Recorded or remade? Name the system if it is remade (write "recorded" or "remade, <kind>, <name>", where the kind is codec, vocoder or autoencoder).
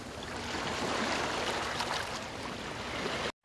recorded